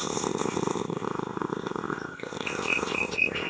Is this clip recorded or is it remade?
remade